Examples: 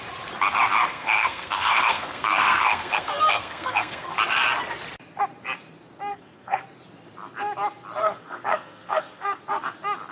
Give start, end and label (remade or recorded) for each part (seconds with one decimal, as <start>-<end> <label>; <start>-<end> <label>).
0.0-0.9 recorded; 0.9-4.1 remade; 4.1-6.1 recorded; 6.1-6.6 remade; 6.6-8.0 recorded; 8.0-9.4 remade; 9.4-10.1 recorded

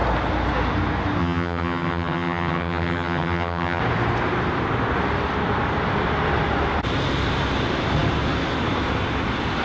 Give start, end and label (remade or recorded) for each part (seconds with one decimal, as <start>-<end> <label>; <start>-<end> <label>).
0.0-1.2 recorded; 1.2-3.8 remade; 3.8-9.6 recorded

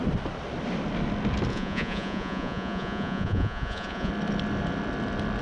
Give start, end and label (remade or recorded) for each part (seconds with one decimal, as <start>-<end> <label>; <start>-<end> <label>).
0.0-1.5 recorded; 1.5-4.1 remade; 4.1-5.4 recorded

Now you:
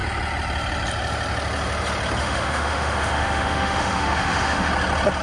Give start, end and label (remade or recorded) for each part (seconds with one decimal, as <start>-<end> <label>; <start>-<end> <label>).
0.0-2.2 recorded; 2.2-4.7 remade; 4.7-5.2 recorded